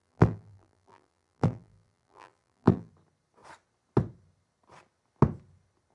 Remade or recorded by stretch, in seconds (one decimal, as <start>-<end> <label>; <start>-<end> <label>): 0.0-2.9 remade; 2.9-5.9 recorded